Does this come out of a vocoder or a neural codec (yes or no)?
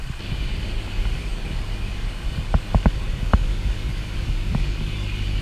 yes